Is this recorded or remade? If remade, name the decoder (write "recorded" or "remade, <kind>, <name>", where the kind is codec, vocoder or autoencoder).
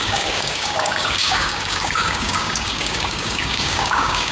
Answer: remade, codec, DAC